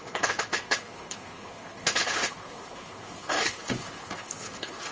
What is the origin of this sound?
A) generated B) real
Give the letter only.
A